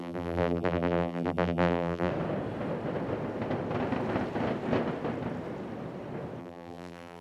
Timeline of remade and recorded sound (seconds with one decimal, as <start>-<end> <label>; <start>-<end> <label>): 0.0-2.1 remade; 2.1-6.4 recorded; 6.4-7.2 remade